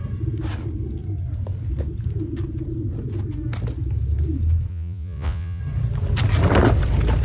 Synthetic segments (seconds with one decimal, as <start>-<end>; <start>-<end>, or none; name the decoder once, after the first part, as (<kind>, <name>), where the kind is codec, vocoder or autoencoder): 4.7-5.6 (vocoder, Vocos)